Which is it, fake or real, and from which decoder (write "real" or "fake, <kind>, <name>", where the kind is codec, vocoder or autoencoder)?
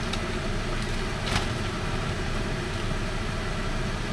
real